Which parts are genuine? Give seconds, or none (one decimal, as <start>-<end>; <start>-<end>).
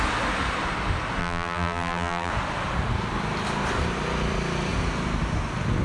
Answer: 0.0-1.2; 2.3-5.8